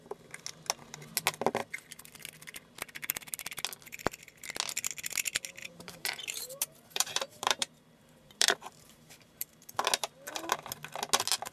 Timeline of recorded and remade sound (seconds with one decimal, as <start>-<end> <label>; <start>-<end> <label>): 0.0-5.6 recorded; 5.6-9.6 remade; 9.6-11.5 recorded